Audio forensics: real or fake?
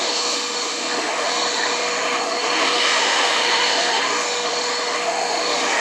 fake